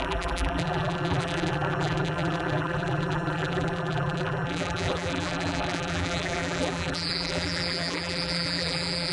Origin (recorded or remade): remade